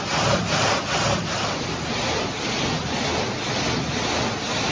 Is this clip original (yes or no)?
yes